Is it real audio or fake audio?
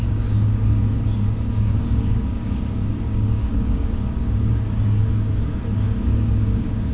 fake